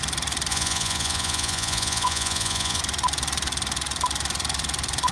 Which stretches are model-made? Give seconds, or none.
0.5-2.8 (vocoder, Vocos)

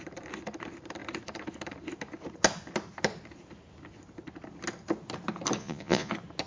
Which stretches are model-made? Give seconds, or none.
5.6-6.1 (vocoder, Vocos)